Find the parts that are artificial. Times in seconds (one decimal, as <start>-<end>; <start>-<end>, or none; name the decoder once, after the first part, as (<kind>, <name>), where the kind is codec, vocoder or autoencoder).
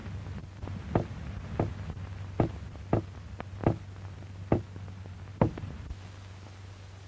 none